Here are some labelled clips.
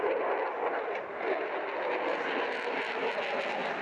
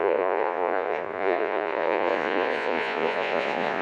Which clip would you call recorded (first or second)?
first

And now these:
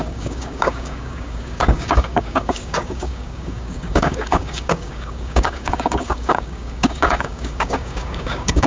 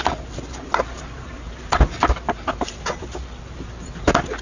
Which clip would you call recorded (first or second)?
second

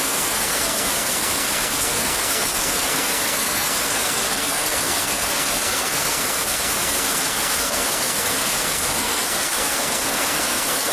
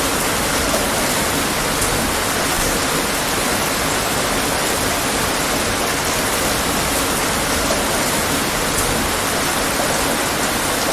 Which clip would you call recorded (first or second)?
second